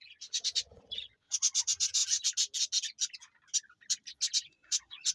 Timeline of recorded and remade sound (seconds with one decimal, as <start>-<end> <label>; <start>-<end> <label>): 0.0-2.0 remade; 2.0-4.5 recorded; 4.5-5.1 remade